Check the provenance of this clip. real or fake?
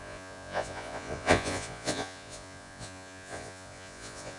fake